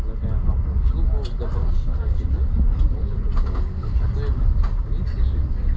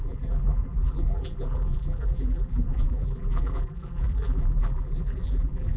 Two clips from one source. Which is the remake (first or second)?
second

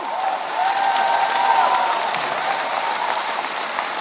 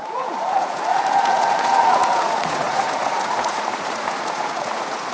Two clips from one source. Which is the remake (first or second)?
second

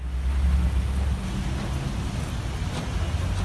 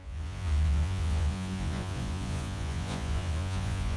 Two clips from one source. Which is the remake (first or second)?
second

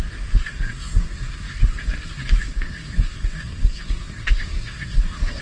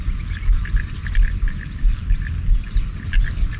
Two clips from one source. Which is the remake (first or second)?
first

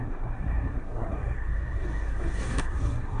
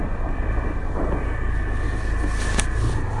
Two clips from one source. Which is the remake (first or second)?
first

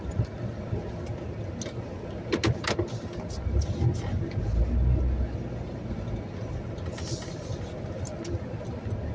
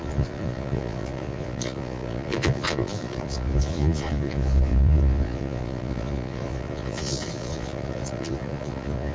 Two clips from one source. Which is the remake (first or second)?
second